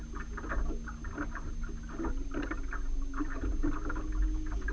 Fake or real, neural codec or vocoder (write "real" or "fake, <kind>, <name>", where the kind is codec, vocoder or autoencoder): real